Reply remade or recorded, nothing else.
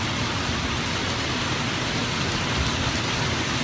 recorded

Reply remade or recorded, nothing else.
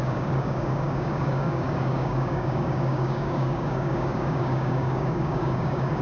remade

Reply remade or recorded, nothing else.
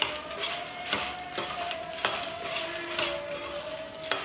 recorded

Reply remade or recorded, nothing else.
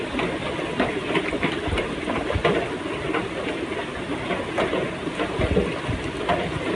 recorded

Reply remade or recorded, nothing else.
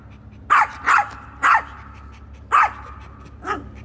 recorded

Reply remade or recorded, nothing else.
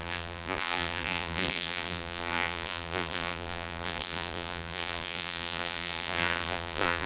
remade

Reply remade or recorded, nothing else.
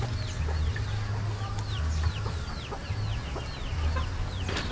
recorded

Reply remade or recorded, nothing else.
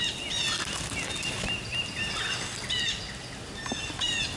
recorded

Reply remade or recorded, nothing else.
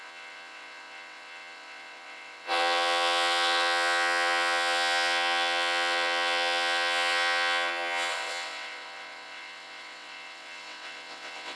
remade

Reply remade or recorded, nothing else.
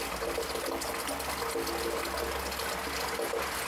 recorded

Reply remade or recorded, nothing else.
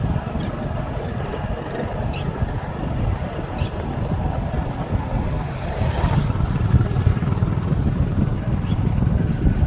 remade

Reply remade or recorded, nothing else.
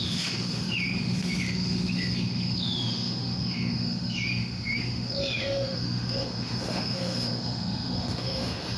remade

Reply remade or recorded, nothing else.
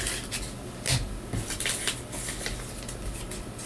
recorded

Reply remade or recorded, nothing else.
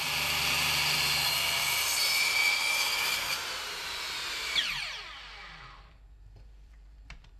remade